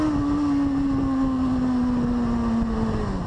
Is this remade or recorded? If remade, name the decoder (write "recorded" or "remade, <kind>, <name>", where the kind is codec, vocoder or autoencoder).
recorded